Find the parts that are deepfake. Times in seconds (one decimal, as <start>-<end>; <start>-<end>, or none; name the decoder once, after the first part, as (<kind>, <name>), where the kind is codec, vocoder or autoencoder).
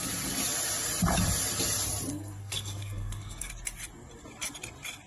2.1-3.5 (codec, SNAC)